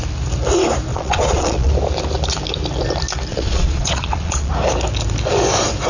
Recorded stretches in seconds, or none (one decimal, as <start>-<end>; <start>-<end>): 0.0-0.9; 1.7-3.3; 4.5-5.9